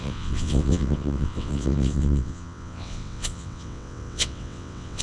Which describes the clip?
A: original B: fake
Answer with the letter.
B